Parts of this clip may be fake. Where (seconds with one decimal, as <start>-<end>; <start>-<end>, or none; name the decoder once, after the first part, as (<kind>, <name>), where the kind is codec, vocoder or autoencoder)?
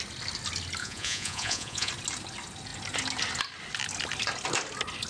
0.8-1.9 (vocoder, Vocos)